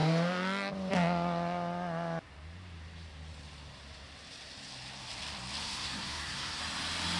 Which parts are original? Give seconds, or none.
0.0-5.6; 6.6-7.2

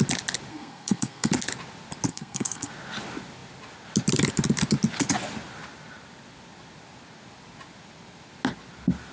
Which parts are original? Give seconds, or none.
0.0-0.5; 1.3-2.1; 2.7-9.1

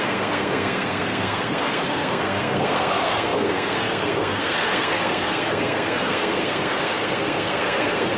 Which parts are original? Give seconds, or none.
none

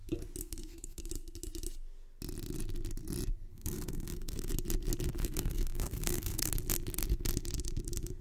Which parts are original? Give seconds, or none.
0.0-0.4; 1.1-3.5; 4.5-5.2; 6.5-8.2

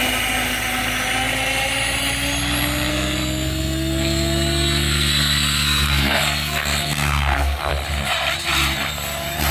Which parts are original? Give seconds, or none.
0.0-2.9; 7.7-9.5

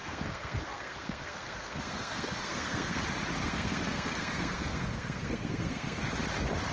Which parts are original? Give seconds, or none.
3.0-3.4; 6.0-6.7

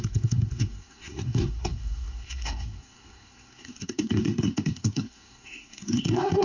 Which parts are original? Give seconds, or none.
none